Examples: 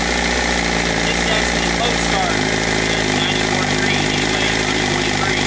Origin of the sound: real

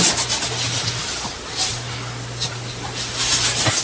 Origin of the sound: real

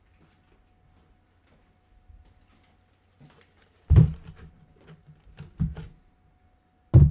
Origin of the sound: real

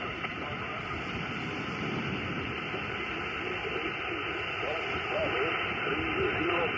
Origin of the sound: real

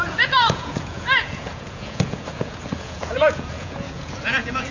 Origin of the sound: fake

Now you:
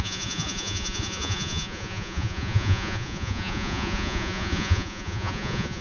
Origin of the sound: fake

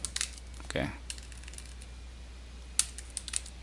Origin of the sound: real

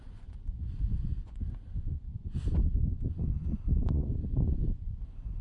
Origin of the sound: fake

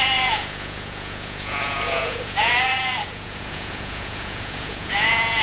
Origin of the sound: fake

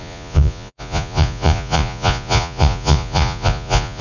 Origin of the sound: fake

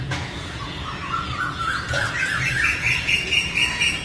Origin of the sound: fake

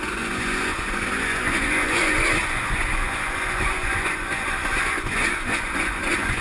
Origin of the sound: fake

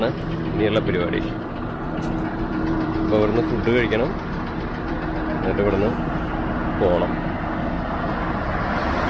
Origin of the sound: real